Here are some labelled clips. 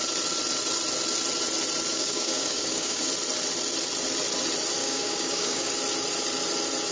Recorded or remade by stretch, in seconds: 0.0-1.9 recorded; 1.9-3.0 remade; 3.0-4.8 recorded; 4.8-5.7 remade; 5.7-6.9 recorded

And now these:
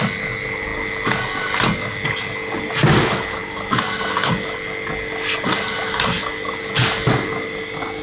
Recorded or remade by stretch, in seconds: 0.0-8.0 recorded

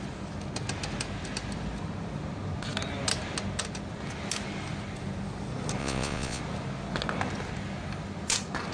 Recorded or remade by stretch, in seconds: 0.0-5.8 recorded; 5.8-6.4 remade; 6.4-8.7 recorded

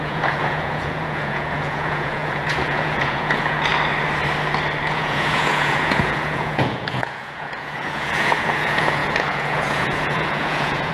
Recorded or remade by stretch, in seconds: 0.0-3.7 remade; 3.7-4.8 recorded; 4.8-10.9 remade

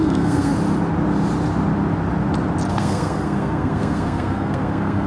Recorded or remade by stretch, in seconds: 0.0-0.5 remade; 0.5-2.7 recorded; 2.7-5.1 remade

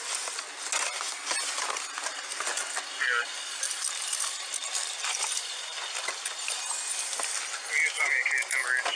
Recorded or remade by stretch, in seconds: 0.0-9.0 recorded